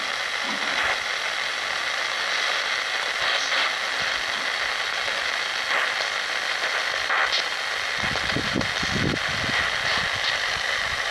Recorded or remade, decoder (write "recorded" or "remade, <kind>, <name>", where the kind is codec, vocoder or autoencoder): recorded